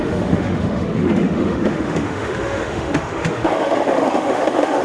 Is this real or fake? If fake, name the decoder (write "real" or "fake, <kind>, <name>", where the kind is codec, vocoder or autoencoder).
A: fake, autoencoder, DAC-VAE